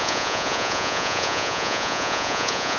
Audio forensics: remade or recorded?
remade